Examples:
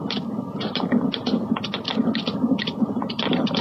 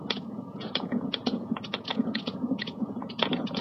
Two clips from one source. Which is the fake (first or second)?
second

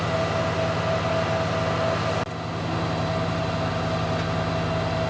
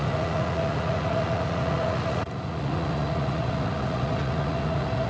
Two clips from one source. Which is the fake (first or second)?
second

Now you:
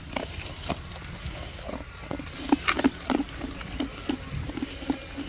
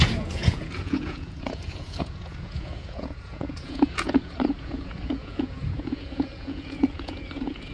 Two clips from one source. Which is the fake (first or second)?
second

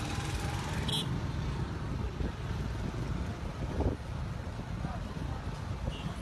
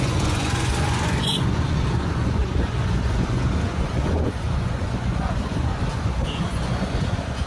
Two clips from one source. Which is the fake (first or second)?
second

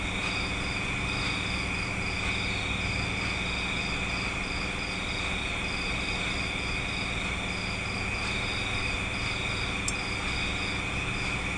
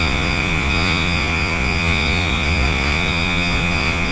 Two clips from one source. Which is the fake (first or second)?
second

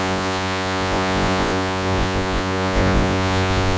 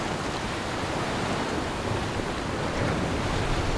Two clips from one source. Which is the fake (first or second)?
first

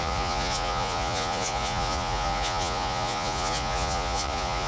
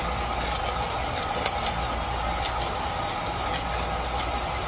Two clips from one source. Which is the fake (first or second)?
first